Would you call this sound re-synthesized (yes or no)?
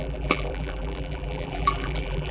yes